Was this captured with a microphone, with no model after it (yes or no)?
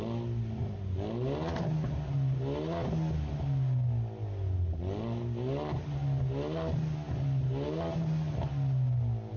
yes